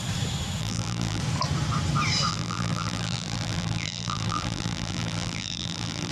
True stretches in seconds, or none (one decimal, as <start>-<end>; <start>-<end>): 0.0-0.6; 1.2-2.3